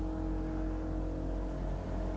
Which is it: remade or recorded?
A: recorded